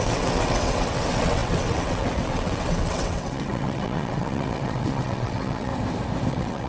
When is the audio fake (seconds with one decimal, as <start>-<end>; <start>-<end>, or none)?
0.0-5.7; 6.3-6.7